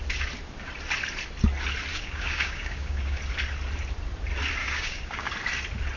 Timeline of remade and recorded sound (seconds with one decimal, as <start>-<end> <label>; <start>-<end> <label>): 0.0-1.9 recorded; 1.9-3.2 remade; 3.2-4.6 recorded; 4.6-5.3 remade; 5.3-6.0 recorded